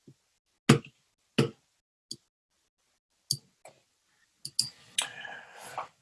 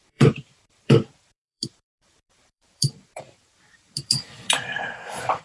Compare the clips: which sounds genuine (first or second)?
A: first